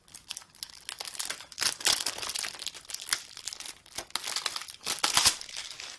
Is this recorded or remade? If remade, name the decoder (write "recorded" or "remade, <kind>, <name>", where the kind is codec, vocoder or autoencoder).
recorded